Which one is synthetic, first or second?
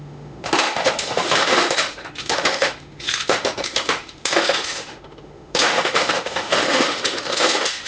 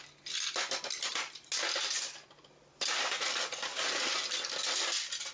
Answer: first